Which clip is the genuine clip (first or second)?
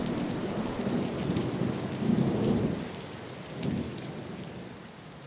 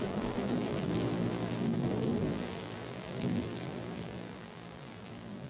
first